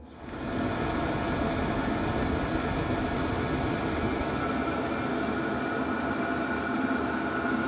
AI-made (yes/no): no